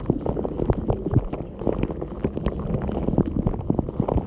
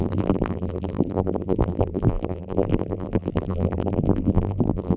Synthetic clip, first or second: second